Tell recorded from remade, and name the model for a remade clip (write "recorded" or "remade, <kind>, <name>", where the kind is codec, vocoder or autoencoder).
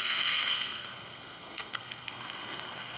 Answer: remade, codec, SNAC